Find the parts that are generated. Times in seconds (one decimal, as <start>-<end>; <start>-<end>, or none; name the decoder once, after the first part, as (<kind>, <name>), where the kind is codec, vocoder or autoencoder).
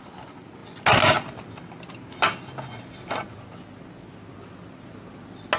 none